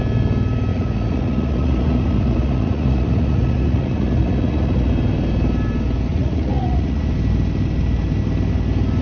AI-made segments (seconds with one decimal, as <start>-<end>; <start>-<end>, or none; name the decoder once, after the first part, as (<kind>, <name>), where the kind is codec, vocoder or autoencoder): 0.7-4.9 (vocoder, Vocos); 6.1-7.0